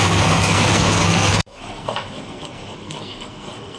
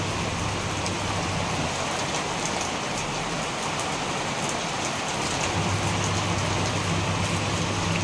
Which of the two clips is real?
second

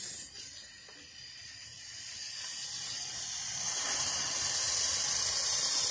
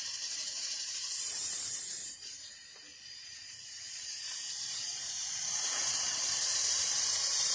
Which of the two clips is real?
first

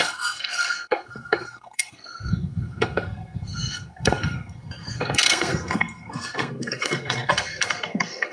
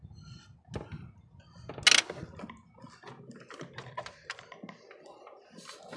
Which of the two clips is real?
second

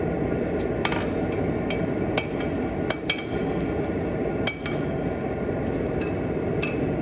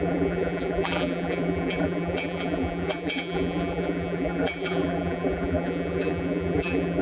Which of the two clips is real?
first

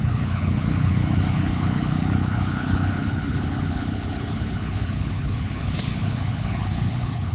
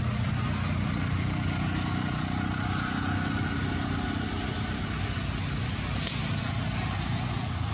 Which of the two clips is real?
second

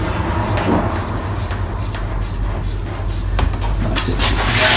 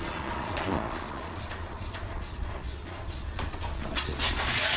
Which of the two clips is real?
first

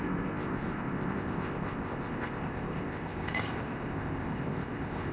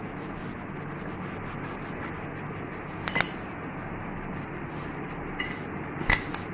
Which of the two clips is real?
second